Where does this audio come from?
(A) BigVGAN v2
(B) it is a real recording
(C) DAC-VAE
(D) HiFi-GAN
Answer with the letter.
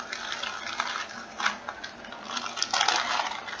B